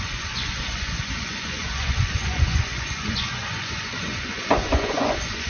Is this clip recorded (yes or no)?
no